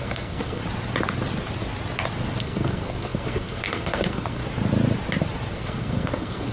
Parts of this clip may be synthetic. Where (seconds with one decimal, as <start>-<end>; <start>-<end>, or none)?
0.0-0.6; 2.4-4.4; 5.5-6.5